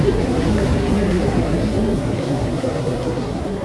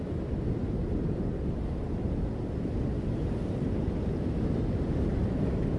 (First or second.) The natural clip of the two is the second